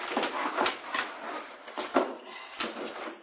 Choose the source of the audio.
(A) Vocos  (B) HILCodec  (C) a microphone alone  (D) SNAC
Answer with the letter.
C